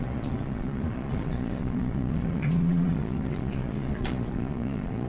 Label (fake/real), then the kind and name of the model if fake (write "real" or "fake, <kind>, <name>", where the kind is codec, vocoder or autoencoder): fake, vocoder, Vocos